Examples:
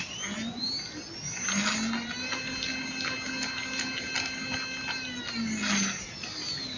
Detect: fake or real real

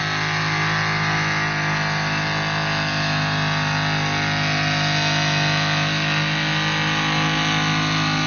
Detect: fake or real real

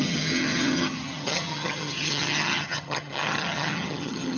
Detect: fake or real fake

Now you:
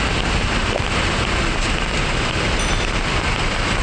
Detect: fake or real real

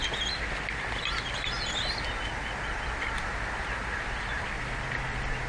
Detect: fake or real real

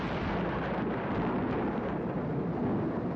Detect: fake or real real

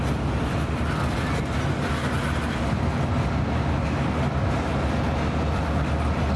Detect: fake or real real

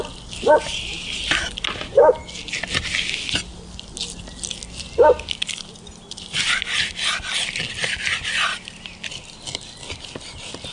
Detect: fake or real real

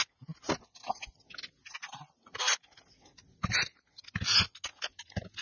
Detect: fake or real real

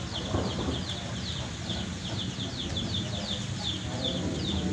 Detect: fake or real real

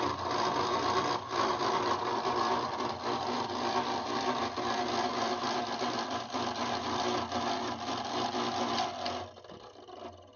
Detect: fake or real real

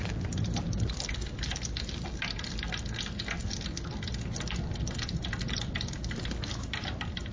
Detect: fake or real real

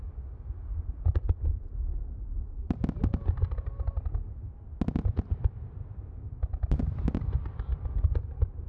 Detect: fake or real real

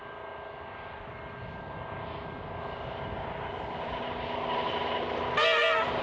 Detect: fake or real real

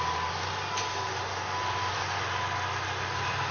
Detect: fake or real real